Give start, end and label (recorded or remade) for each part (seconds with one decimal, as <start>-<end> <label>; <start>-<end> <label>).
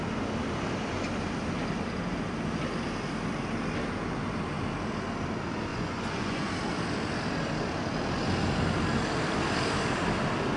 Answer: 0.0-5.7 recorded; 5.7-6.5 remade; 6.5-10.6 recorded